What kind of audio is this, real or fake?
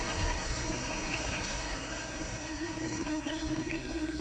fake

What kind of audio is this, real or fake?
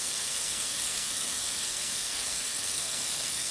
fake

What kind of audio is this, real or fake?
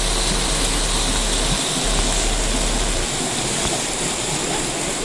real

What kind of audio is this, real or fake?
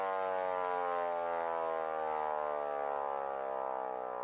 real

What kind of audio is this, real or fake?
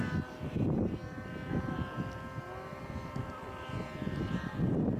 real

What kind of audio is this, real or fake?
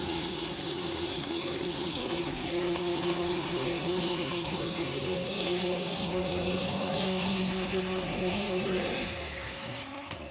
fake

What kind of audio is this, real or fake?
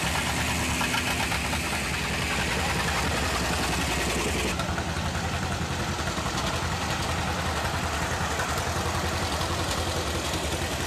real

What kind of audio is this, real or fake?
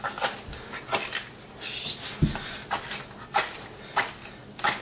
real